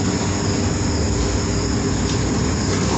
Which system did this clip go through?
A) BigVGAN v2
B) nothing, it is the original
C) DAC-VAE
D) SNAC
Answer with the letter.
B